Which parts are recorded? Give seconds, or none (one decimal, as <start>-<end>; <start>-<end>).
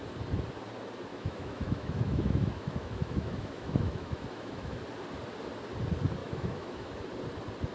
0.0-1.1; 4.8-6.2; 7.1-7.7